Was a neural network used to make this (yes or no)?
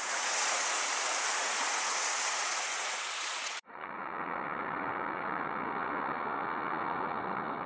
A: yes